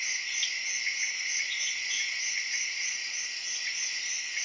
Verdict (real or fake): fake